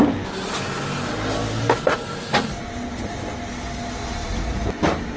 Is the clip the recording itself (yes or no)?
yes